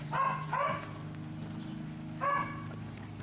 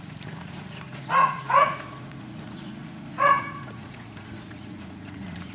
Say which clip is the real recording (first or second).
first